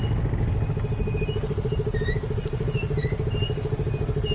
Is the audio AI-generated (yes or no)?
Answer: no